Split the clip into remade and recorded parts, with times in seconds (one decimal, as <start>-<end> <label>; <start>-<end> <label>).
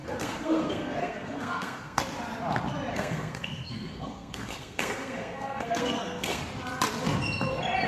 0.0-2.0 remade; 2.0-2.9 recorded; 2.9-6.4 remade; 6.4-7.9 recorded